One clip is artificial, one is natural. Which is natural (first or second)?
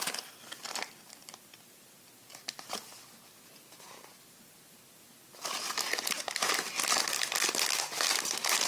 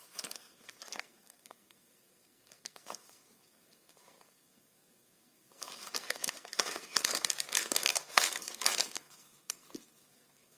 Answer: first